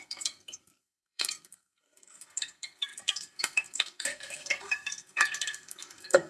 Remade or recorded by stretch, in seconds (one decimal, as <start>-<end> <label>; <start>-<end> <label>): 0.0-6.3 remade